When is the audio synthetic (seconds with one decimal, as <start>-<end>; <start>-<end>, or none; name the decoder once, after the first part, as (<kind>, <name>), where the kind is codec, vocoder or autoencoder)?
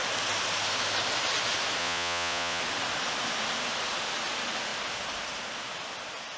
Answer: 1.8-2.6 (vocoder, Vocos)